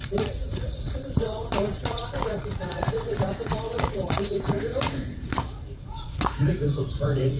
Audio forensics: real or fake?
fake